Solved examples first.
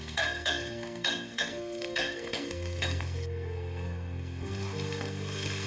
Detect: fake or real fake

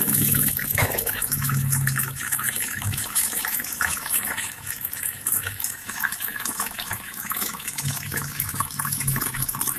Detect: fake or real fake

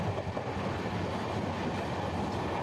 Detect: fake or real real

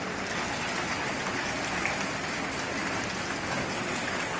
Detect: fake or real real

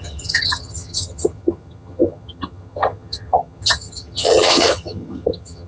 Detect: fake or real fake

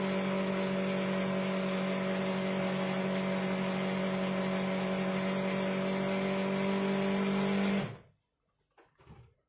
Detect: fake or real real